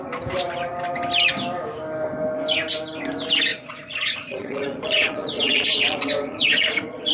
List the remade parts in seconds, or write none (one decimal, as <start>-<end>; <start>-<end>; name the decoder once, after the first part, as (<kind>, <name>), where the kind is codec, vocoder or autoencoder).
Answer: 3.5-7.1 (vocoder, Vocos)